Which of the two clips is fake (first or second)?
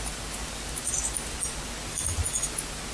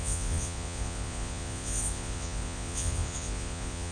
second